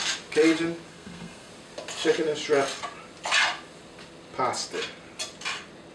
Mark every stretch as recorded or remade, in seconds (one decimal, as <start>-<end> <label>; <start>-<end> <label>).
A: 0.0-0.9 recorded; 0.9-1.5 remade; 1.5-5.9 recorded